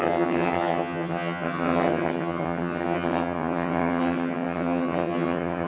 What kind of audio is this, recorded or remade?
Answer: remade